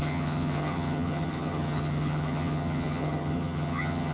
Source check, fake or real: fake